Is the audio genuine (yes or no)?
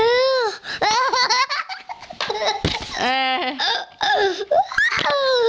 yes